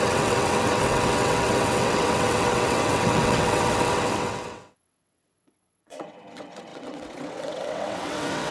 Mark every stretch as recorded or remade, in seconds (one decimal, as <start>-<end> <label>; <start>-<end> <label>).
0.0-8.5 remade